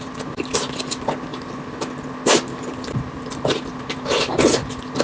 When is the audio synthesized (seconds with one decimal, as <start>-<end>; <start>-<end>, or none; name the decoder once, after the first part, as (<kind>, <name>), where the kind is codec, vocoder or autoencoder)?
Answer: none